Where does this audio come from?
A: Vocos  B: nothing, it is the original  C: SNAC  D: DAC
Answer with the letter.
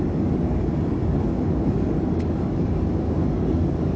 D